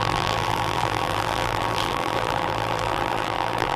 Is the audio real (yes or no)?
no